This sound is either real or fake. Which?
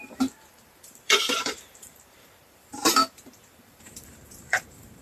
fake